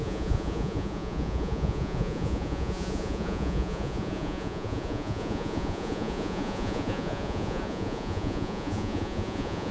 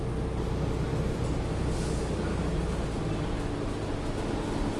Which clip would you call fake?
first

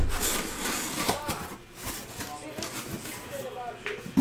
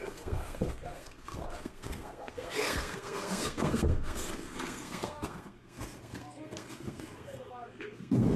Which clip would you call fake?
second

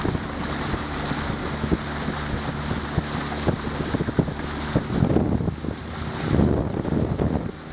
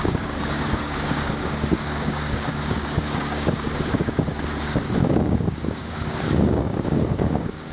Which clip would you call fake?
second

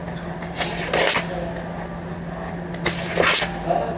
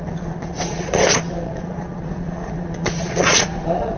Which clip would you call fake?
second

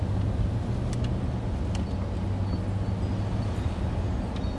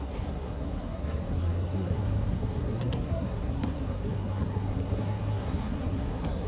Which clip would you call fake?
second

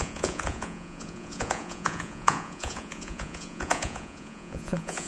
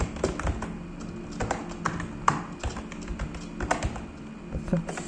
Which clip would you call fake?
first